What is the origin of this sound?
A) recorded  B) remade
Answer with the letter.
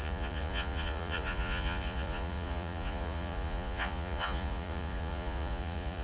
B